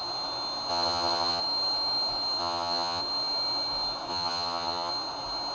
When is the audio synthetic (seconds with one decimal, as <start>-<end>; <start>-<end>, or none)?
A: 0.7-1.4; 2.4-3.0; 4.1-4.9